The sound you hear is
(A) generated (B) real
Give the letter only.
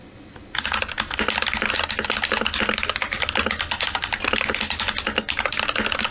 B